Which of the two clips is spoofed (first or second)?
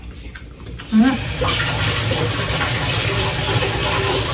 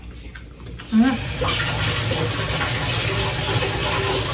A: first